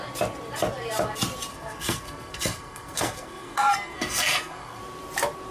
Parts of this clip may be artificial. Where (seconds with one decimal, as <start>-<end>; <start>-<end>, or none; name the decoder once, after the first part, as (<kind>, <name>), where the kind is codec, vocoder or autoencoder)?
1.5-4.8 (codec, SNAC)